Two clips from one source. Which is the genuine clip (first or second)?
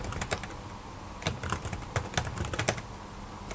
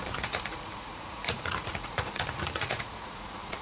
first